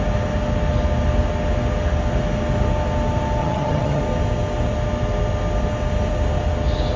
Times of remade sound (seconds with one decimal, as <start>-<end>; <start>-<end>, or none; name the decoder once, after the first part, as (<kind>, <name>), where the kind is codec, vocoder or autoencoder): 3.4-4.0 (vocoder, HiFi-GAN)